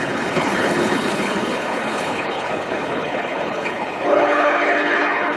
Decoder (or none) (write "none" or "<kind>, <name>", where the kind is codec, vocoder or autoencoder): codec, HILCodec